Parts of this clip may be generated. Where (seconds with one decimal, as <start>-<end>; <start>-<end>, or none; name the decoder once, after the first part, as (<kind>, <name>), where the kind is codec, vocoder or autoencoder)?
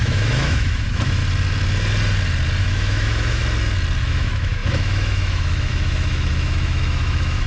0.0-1.2 (autoencoder, DAC-VAE); 2.6-3.4; 4.0-7.5